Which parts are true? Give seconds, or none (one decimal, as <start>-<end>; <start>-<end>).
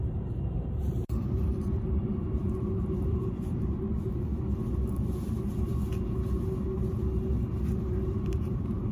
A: 4.3-4.9; 5.7-7.6